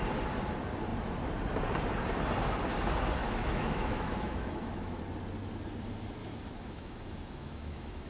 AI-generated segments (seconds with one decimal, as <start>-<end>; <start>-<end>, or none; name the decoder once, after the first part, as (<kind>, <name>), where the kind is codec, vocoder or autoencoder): 3.2-5.0 (autoencoder, DAC-VAE); 6.2-8.1